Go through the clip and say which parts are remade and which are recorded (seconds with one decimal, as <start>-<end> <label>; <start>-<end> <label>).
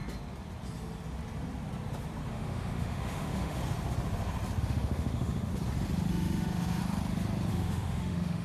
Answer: 0.0-2.3 recorded; 2.3-3.6 remade; 3.6-4.6 recorded; 4.6-5.5 remade; 5.5-6.1 recorded; 6.1-6.8 remade; 6.8-7.5 recorded; 7.5-8.4 remade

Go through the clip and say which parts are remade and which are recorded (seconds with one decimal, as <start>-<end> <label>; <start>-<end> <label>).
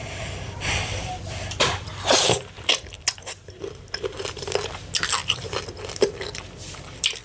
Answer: 0.0-3.2 remade; 3.2-5.2 recorded; 5.2-7.2 remade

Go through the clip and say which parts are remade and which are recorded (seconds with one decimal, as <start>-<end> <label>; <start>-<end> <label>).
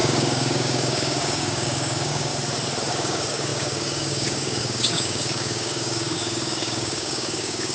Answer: 0.0-2.3 remade; 2.3-2.9 recorded; 2.9-7.7 remade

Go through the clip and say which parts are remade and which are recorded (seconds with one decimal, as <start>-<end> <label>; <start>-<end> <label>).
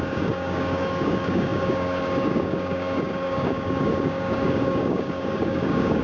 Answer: 0.0-6.0 remade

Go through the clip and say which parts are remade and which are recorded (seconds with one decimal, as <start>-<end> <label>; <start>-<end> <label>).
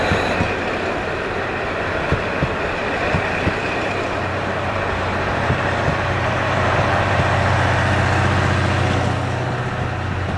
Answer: 0.0-2.8 recorded; 2.8-7.1 remade; 7.1-10.4 recorded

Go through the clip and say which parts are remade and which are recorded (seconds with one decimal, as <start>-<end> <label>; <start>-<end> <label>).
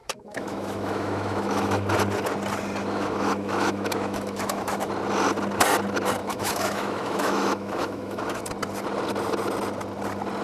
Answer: 0.0-1.9 remade; 1.9-2.8 recorded; 2.8-4.9 remade; 4.9-6.2 recorded; 6.2-8.4 remade; 8.4-10.4 recorded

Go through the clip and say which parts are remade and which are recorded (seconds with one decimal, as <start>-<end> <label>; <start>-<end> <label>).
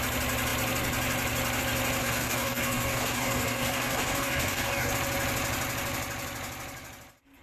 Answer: 0.0-2.0 recorded; 2.0-4.9 remade; 4.9-7.4 recorded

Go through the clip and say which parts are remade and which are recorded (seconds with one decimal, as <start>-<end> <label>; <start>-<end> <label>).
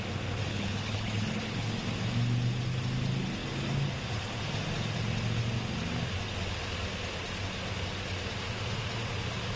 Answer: 0.0-0.5 recorded; 0.5-1.7 remade; 1.7-9.6 recorded